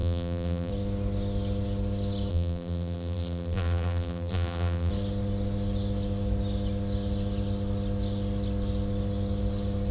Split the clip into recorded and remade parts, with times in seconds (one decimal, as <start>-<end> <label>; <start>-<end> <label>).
0.0-0.7 remade; 0.7-2.3 recorded; 2.3-4.9 remade; 4.9-9.9 recorded